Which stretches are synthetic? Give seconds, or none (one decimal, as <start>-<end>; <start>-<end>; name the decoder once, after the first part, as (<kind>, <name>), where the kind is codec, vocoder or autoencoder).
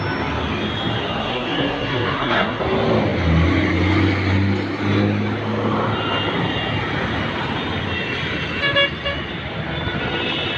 1.2-2.6 (codec, SNAC)